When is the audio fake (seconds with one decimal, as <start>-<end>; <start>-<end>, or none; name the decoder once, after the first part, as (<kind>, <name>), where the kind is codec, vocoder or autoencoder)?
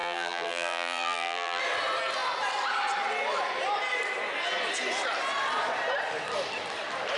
0.0-1.6 (vocoder, BigVGAN v2)